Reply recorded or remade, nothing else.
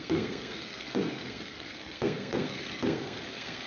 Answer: remade